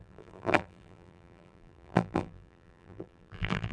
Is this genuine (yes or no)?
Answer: no